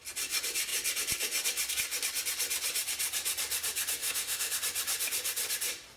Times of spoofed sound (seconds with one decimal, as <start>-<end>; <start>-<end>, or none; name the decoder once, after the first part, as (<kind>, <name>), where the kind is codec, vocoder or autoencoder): 4.0-4.5 (autoencoder, DAC-VAE)